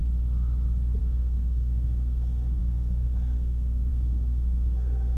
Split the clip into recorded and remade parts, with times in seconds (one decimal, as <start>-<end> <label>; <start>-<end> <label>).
0.0-1.0 recorded; 1.0-5.2 remade